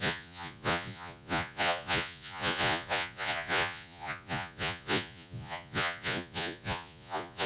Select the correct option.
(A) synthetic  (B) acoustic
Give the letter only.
A